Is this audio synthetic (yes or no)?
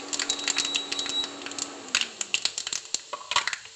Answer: no